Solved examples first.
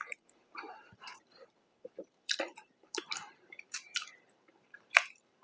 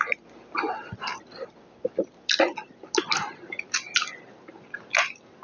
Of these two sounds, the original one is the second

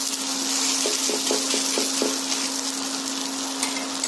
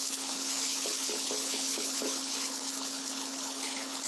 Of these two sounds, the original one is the first